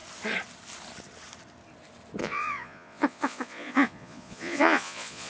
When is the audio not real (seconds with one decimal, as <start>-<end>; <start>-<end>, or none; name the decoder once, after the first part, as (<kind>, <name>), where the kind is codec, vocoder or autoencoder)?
2.2-5.3 (vocoder, Vocos)